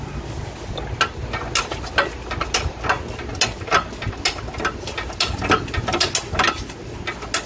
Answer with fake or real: real